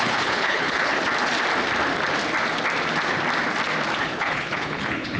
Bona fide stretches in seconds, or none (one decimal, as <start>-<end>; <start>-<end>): 0.9-4.0